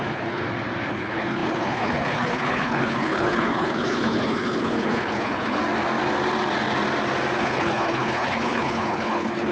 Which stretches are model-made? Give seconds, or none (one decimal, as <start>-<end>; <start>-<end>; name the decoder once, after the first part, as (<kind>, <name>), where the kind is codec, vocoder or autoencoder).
0.0-0.4 (codec, HILCodec); 0.9-5.6; 7.4-9.5